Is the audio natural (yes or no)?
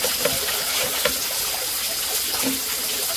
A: yes